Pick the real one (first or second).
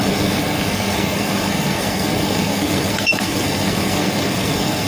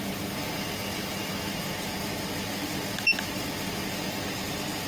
second